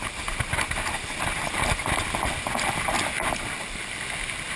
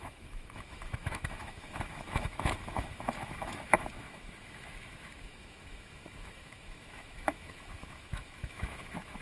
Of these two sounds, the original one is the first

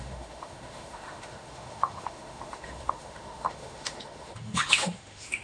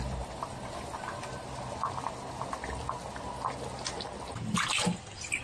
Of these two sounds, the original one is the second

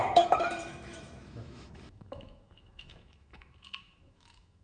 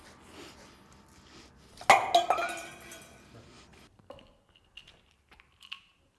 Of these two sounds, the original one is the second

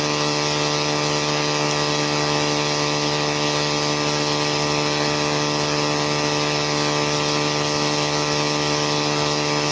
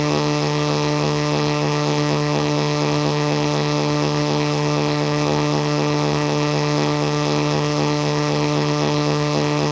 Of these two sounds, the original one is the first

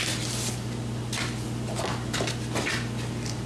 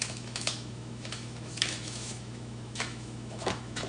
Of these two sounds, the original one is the first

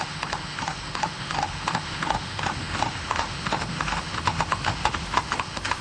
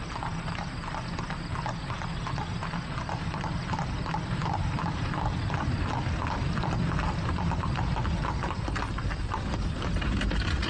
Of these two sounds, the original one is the second